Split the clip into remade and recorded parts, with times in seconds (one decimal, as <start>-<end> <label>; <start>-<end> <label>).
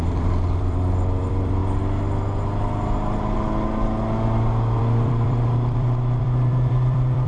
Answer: 0.0-1.6 remade; 1.6-4.8 recorded; 4.8-7.3 remade